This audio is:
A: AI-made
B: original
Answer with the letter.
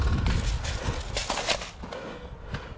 B